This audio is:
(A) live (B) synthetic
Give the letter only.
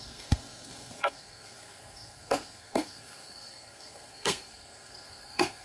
B